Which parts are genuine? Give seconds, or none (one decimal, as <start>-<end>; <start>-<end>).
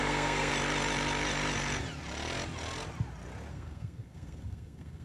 0.5-3.5